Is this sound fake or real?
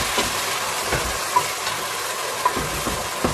real